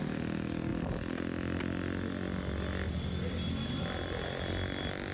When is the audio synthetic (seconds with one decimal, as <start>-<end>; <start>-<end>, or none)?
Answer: none

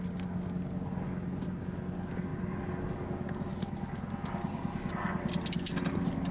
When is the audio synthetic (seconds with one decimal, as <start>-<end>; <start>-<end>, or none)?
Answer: none

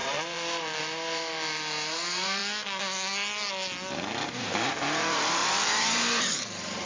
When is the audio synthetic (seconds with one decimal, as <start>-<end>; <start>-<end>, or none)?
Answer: 0.0-2.4; 4.4-6.9

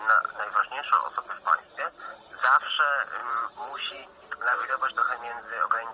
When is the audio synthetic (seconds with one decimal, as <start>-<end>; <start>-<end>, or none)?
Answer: 1.4-2.0; 3.2-4.9

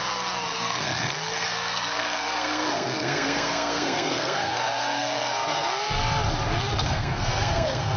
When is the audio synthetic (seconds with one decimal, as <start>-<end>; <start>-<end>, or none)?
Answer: 0.0-6.0; 6.6-8.0

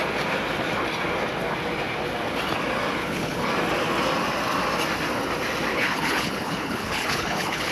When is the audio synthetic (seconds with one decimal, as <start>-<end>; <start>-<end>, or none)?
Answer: 3.0-3.5; 5.7-7.7